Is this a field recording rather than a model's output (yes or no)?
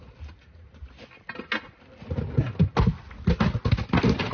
yes